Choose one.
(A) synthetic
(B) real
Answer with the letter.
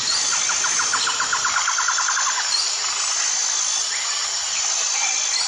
B